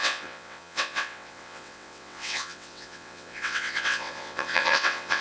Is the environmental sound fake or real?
fake